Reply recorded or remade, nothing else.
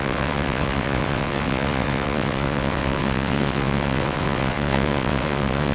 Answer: remade